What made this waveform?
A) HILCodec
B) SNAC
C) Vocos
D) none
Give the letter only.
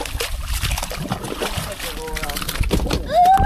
D